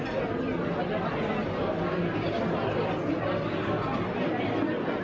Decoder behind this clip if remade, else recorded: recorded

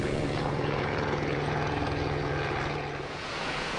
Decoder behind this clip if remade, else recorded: remade, vocoder, Vocos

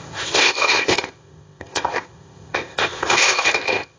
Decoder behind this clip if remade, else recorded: remade, codec, ZipCodec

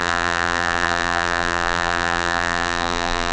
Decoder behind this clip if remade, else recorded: remade, vocoder, BigVGAN v2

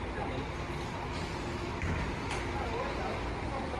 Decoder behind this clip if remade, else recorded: recorded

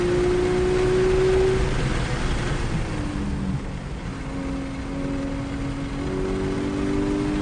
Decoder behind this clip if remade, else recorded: recorded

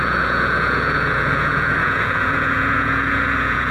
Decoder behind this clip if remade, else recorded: remade, vocoder, Vocos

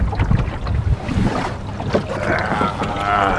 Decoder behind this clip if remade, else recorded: recorded